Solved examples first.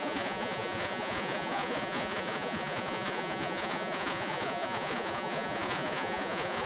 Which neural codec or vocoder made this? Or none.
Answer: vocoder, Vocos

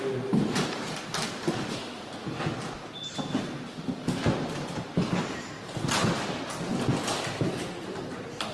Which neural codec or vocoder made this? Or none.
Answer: none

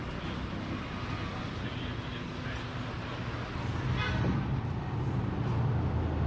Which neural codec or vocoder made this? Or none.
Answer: none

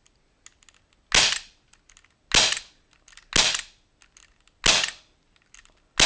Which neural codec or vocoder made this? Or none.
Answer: none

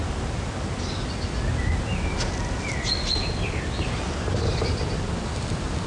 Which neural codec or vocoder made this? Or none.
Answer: none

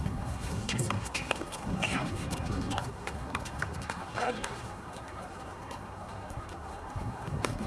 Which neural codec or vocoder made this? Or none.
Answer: codec, SNAC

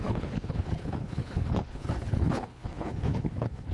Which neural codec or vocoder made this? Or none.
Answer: codec, HILCodec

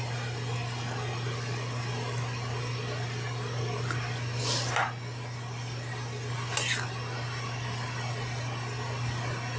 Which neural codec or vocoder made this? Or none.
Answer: none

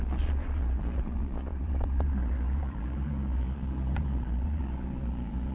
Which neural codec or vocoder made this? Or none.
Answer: vocoder, Vocos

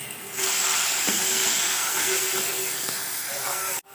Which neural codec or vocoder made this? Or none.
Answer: codec, SNAC